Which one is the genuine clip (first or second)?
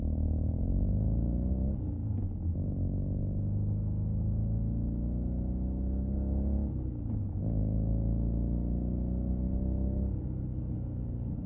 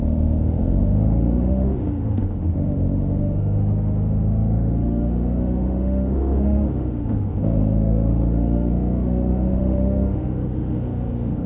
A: first